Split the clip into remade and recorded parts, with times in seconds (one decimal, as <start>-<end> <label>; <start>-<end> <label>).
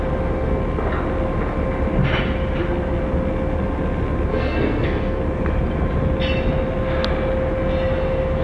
0.0-4.3 recorded; 4.3-5.2 remade; 5.2-8.4 recorded